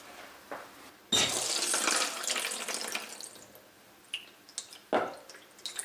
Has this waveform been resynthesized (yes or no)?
no